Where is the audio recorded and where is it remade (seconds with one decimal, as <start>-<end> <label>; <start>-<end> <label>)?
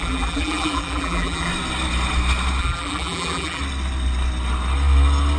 0.0-1.5 remade; 1.5-2.6 recorded; 2.6-3.6 remade; 3.6-5.4 recorded